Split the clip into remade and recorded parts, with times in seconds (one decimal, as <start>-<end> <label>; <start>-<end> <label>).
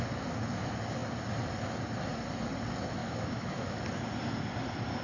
0.0-3.0 recorded; 3.0-3.8 remade; 3.8-5.0 recorded